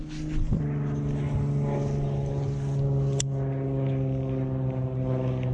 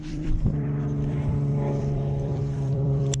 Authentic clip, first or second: first